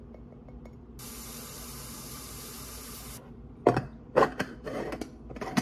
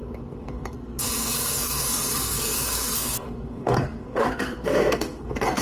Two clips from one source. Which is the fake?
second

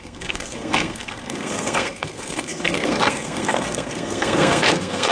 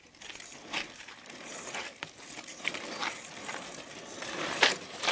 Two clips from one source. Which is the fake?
first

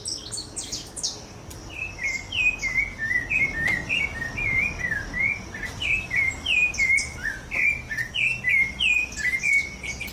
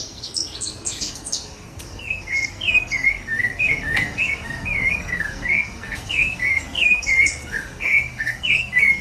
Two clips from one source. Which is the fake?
second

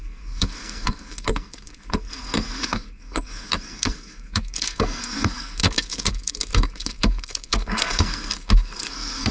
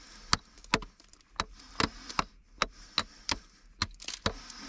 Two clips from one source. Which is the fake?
first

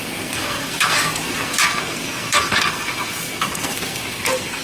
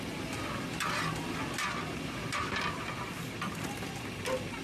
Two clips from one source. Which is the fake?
first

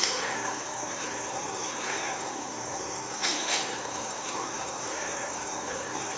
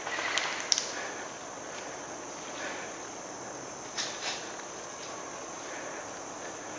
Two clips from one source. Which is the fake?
first